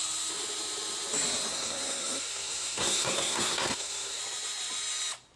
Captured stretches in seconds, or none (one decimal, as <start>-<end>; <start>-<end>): 0.0-1.5; 4.2-5.4